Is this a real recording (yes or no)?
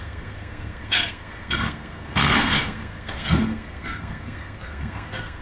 no